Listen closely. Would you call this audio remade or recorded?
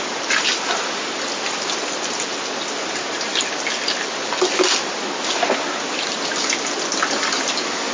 recorded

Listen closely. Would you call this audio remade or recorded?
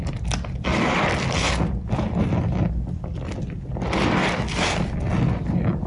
recorded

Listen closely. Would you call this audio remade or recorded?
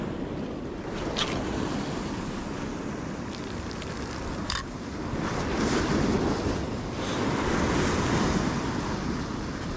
recorded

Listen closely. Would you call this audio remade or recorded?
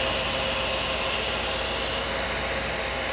recorded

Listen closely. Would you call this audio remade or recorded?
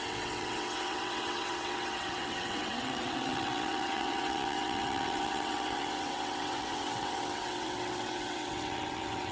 remade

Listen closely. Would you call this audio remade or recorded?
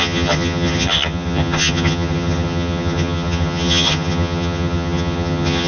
remade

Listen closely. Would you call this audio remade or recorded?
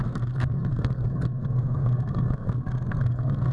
remade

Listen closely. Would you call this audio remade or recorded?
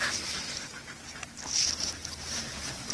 recorded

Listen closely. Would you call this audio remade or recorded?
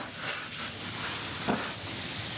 recorded